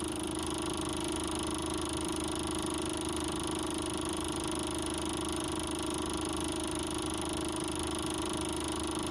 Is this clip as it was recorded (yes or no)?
yes